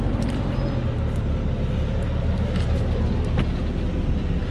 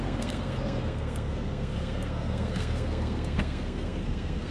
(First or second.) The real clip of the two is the first